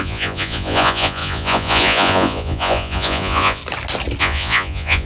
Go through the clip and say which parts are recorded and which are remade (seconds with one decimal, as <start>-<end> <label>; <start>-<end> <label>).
0.0-3.6 remade; 3.6-4.2 recorded; 4.2-5.1 remade